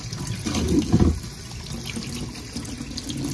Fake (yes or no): no